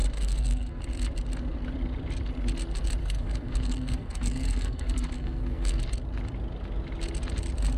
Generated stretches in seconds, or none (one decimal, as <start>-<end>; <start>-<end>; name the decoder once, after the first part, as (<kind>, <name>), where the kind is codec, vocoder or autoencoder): 0.0-0.8 (codec, SNAC); 3.0-5.8